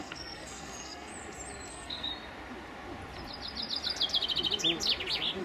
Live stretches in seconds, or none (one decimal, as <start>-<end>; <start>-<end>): 1.1-1.7; 2.1-5.4